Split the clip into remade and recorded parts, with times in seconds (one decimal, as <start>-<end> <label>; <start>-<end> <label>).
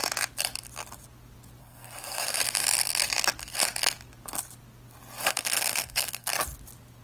0.0-1.6 recorded; 1.6-2.4 remade; 2.4-5.2 recorded; 5.2-6.3 remade; 6.3-7.0 recorded